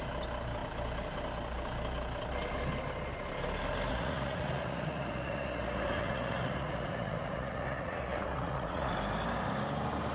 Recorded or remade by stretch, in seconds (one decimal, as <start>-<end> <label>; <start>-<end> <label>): 0.0-3.9 recorded; 3.9-8.9 remade; 8.9-10.1 recorded